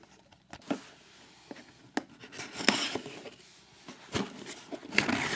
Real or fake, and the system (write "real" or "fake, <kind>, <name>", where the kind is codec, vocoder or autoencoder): real